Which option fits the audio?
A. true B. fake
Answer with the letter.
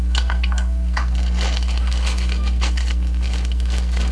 B